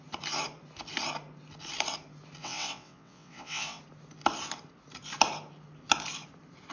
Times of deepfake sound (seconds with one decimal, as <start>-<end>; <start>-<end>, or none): 2.4-3.8